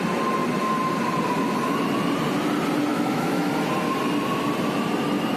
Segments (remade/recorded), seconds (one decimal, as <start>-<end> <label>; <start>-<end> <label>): 0.0-2.9 recorded; 2.9-3.5 remade; 3.5-5.4 recorded